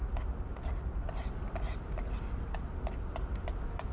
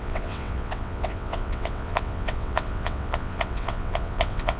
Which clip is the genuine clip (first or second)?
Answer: first